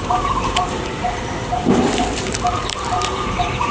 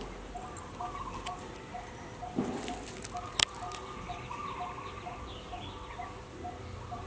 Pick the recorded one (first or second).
second